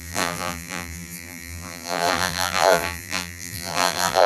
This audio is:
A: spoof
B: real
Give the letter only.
A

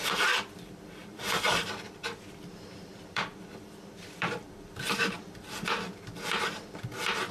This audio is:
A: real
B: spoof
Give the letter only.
B